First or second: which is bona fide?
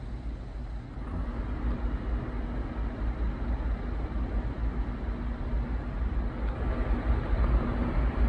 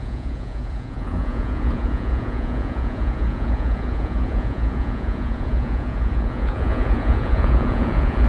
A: first